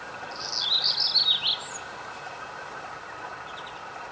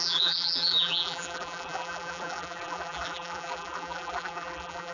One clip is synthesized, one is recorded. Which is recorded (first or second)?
first